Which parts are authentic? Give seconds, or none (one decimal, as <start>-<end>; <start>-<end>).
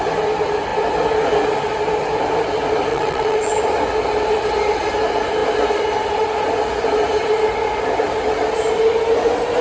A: 0.0-2.9; 3.6-9.6